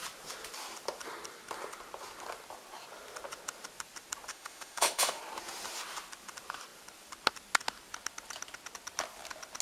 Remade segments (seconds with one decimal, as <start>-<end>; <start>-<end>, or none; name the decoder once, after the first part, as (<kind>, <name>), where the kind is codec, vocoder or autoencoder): 4.3-5.2 (autoencoder, DAC-VAE)